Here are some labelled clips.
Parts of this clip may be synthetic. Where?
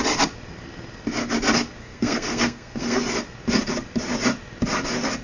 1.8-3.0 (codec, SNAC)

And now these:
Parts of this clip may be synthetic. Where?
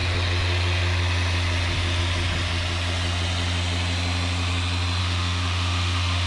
5.0-6.3 (autoencoder, DAC-VAE)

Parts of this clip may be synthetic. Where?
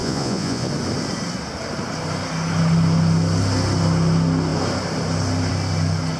0.0-0.7 (vocoder, Vocos)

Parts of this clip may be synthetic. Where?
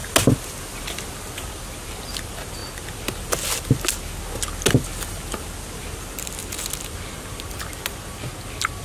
none